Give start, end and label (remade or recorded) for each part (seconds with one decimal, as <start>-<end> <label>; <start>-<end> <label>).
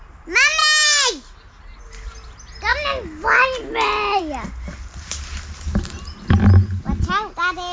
0.0-7.7 recorded